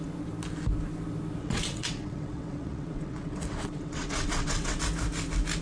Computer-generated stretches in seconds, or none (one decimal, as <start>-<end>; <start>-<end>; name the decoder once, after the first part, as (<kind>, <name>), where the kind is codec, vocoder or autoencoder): 1.4-4.8 (vocoder, WaveNeXt)